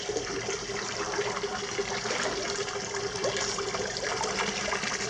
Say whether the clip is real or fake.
real